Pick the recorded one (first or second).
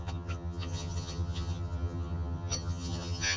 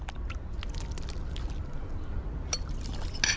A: second